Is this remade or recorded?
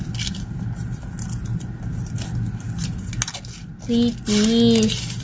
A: recorded